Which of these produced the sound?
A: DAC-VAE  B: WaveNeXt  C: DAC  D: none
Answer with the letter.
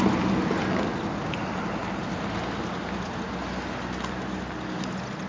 D